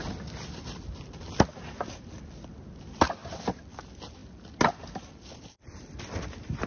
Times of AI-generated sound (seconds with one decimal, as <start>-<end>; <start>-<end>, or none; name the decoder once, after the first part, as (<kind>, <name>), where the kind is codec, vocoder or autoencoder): none